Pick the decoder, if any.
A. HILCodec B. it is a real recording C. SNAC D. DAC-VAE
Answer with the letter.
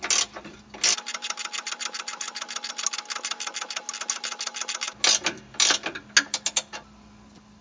B